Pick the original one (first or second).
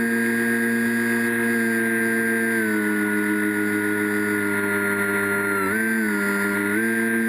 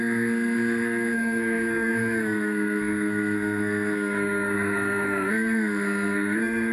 first